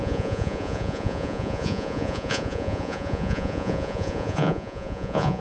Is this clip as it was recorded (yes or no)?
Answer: no